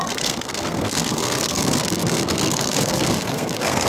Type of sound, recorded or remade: remade